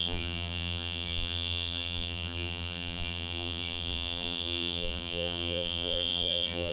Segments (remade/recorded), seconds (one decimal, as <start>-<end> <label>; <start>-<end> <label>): 0.0-6.7 remade